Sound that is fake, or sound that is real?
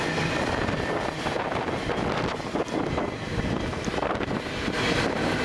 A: real